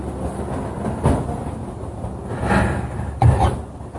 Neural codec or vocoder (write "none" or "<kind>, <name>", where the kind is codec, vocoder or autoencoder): none